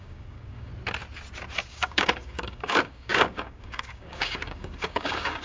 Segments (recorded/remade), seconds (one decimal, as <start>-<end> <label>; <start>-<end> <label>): 0.0-0.7 remade; 0.7-1.7 recorded; 1.7-5.4 remade